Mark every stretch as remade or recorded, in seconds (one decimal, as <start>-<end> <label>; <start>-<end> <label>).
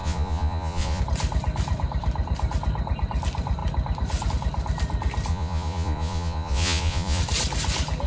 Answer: 0.0-1.0 remade; 1.0-5.3 recorded; 5.3-7.2 remade; 7.2-8.1 recorded